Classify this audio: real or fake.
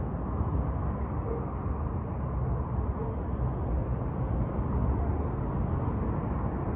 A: real